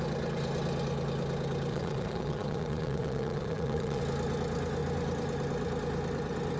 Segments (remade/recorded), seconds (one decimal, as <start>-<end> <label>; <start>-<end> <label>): 0.0-1.7 recorded; 1.7-4.0 remade; 4.0-6.6 recorded